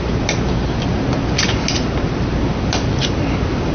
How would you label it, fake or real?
real